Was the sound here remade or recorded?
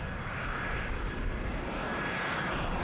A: recorded